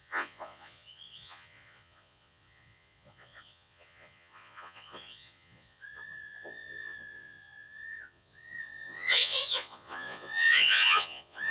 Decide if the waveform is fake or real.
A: fake